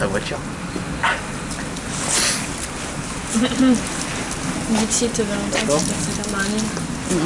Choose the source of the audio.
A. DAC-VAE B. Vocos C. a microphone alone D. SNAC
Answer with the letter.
C